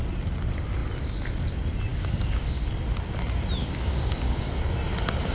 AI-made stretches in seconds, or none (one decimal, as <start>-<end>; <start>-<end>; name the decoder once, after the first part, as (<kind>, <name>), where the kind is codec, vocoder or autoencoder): 1.9-2.6 (codec, DAC); 3.6-4.5